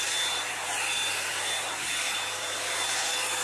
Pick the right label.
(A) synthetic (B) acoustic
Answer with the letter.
A